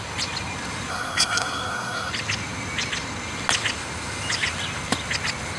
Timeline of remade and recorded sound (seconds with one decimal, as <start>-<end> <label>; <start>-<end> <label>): 0.0-0.9 recorded; 0.9-2.1 remade; 2.1-5.6 recorded